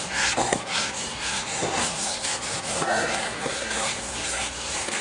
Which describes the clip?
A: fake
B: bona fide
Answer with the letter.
A